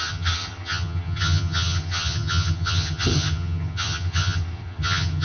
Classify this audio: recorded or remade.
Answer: remade